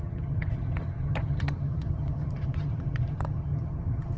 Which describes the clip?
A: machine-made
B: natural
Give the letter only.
A